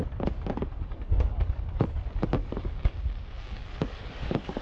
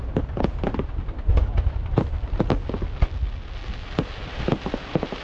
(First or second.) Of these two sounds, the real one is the second